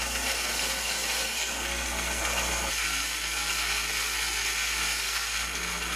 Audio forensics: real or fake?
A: fake